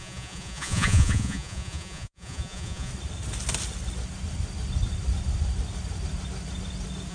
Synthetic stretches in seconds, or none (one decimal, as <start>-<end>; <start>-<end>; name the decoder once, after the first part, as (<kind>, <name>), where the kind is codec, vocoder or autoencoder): 0.0-2.9 (vocoder, Vocos)